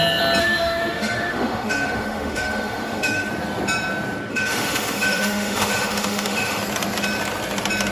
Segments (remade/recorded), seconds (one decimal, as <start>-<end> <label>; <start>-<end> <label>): 0.0-0.4 recorded; 0.4-3.3 remade; 3.3-4.3 recorded; 4.3-6.6 remade; 6.6-7.9 recorded